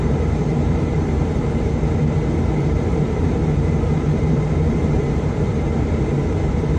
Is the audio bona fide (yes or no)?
no